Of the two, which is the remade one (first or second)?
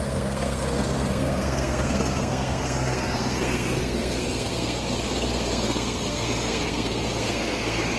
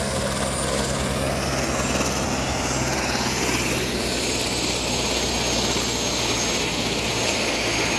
first